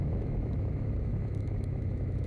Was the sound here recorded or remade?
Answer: remade